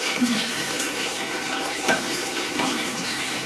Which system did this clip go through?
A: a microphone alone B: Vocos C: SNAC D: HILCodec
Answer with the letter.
C